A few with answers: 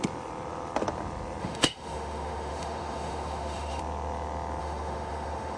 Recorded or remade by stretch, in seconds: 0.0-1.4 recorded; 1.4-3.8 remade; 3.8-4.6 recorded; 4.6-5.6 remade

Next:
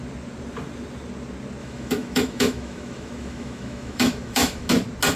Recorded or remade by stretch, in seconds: 0.0-1.6 recorded; 1.6-4.7 remade; 4.7-5.2 recorded

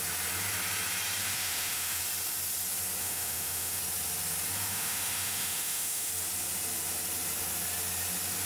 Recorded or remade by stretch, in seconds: 0.0-1.2 recorded; 1.2-2.0 remade; 2.0-3.0 recorded; 3.0-3.8 remade; 3.8-4.7 recorded; 4.7-6.1 remade; 6.1-8.5 recorded

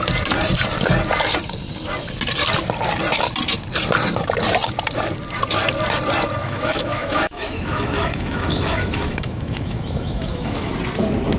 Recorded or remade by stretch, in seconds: 0.0-6.4 recorded; 6.4-10.7 remade; 10.7-11.4 recorded

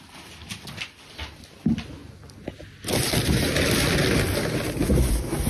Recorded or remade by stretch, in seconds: 0.0-5.5 recorded

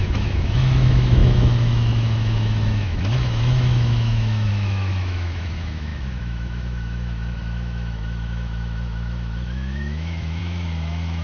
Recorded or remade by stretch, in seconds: 0.0-11.2 remade

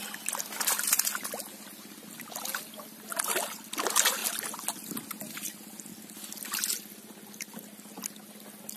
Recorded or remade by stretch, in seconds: 0.0-8.8 recorded

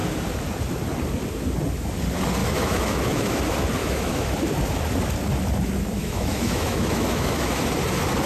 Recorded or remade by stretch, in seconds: 0.0-2.4 recorded; 2.4-3.4 remade; 3.4-3.8 recorded; 3.8-4.3 remade; 4.3-6.0 recorded; 6.0-7.6 remade; 7.6-8.3 recorded